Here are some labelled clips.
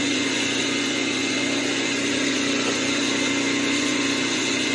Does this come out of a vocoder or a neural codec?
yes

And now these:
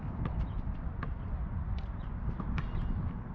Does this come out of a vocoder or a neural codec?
no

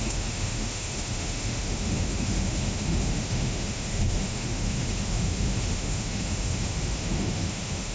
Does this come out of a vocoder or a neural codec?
yes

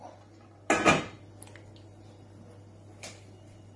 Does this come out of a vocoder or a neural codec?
no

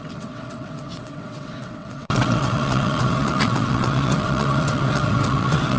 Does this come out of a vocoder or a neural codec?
yes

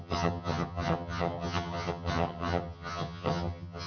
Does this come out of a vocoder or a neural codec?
yes